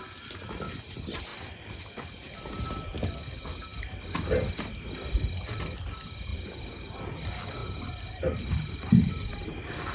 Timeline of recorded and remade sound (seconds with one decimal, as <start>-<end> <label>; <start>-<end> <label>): 0.0-9.9 recorded